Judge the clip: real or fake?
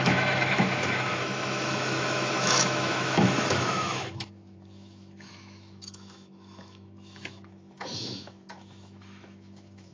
fake